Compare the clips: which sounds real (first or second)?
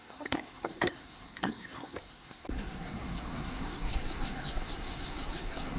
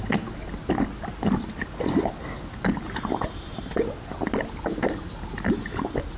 second